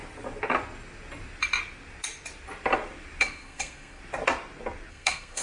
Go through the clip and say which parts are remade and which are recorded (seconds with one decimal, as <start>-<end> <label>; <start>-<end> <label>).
0.0-3.2 recorded; 3.2-4.0 remade; 4.0-4.9 recorded; 4.9-5.4 remade